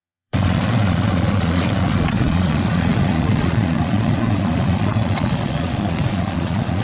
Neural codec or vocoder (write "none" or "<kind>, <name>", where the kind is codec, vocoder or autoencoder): vocoder, Vocos